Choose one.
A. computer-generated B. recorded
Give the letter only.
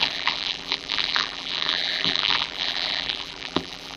A